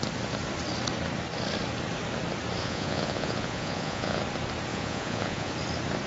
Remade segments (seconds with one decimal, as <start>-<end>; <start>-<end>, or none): 2.6-4.2; 4.7-5.5